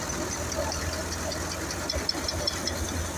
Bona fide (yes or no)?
yes